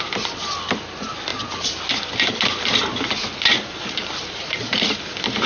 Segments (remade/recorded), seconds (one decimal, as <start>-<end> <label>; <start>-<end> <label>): 0.0-5.5 recorded